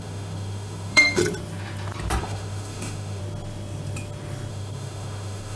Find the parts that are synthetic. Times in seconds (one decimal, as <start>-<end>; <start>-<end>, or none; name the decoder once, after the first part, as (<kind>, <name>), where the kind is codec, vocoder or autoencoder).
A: 0.0-1.2 (autoencoder, DAC-VAE); 2.2-3.2; 4.5-5.6